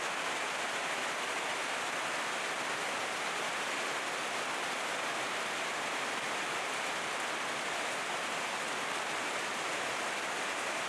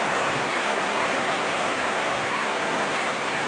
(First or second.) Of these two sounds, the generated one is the second